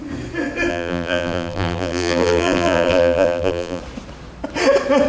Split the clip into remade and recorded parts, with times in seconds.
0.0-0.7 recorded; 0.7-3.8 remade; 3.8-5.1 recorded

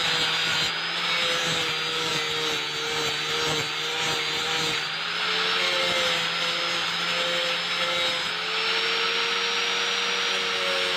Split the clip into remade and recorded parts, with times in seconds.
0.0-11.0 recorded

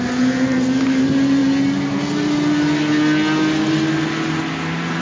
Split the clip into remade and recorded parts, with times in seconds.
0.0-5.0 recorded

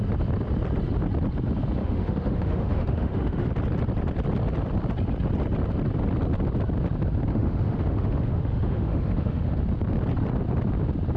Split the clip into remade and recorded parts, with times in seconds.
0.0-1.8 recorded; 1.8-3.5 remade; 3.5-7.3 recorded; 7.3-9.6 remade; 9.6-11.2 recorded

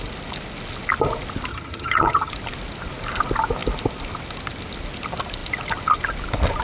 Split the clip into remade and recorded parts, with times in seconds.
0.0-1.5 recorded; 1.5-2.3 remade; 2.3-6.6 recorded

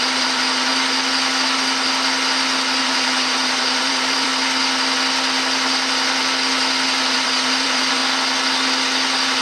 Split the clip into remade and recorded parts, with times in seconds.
0.0-0.7 remade; 0.7-2.8 recorded; 2.8-4.3 remade; 4.3-7.0 recorded; 7.0-8.0 remade; 8.0-9.4 recorded

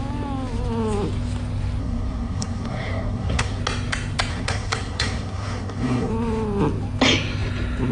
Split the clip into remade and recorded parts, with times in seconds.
0.0-1.8 recorded; 1.8-3.6 remade; 3.6-4.3 recorded; 4.3-6.1 remade; 6.1-7.9 recorded